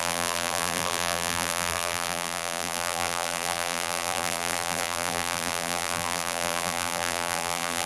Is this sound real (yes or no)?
no